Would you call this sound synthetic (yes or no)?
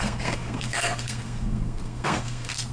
yes